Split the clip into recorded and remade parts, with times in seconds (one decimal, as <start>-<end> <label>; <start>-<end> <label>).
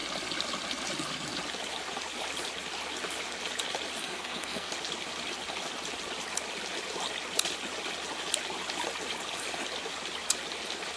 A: 0.0-4.0 recorded; 4.0-4.7 remade; 4.7-11.0 recorded